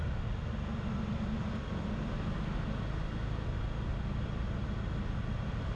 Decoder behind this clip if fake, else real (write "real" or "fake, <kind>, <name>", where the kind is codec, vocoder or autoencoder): real